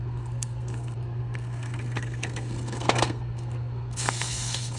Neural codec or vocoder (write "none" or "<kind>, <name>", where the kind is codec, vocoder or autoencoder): codec, SNAC